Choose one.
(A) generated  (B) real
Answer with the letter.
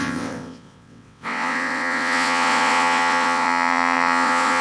A